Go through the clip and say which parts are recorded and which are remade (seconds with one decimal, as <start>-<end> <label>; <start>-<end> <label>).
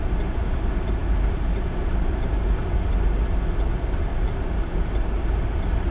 0.0-5.9 recorded